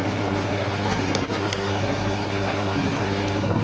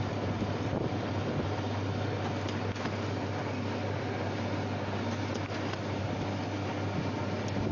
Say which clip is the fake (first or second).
first